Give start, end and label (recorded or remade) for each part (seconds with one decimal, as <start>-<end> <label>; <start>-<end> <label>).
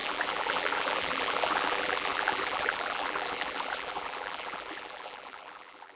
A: 0.0-6.0 remade